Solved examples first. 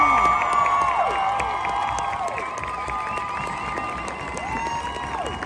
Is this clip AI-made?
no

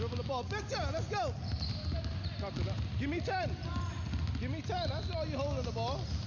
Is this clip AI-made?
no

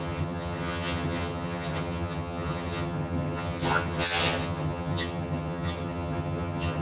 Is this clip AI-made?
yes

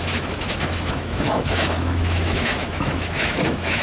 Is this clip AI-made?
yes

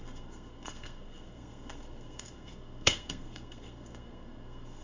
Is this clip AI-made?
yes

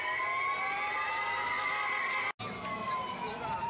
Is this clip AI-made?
no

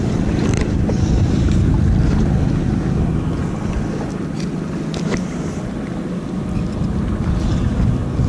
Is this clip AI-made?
no